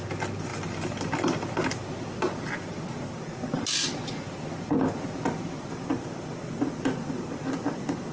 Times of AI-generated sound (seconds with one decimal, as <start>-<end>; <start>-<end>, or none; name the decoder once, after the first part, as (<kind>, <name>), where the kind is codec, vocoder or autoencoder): none